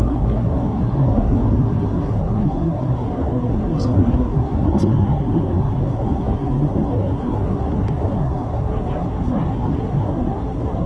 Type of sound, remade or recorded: remade